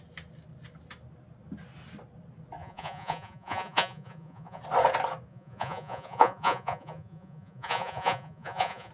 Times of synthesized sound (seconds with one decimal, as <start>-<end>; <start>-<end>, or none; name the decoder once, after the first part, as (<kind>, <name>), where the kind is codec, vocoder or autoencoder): 2.6-4.6 (vocoder, Vocos); 5.3-8.9